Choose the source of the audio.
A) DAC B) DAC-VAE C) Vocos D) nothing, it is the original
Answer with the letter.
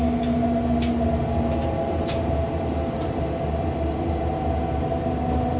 D